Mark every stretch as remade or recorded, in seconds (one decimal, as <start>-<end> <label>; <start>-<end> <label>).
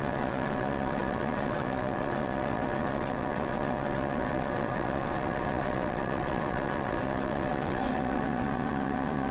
0.0-9.3 remade